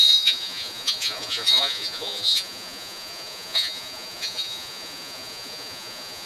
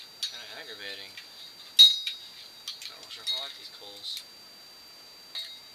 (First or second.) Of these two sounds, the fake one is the first